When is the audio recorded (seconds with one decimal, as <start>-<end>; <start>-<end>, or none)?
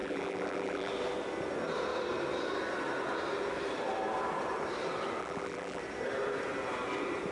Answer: 0.9-5.2; 5.8-7.3